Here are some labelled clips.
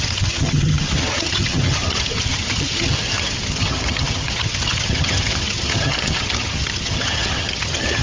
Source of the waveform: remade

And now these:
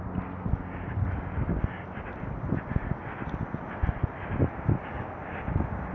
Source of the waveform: recorded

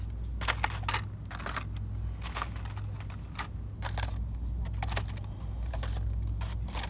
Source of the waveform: recorded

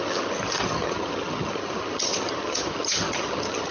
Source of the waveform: remade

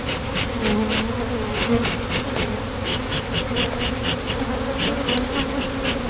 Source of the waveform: recorded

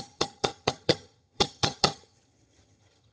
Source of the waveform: remade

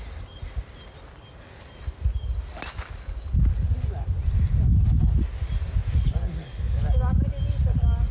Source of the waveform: recorded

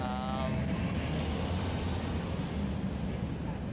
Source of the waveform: recorded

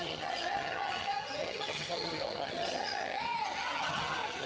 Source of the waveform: remade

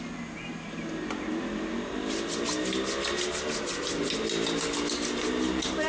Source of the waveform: recorded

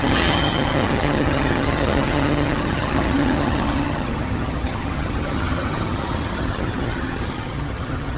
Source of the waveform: remade